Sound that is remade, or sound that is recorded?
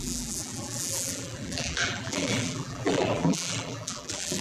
remade